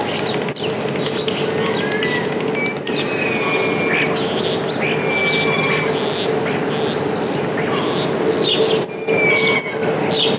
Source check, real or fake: real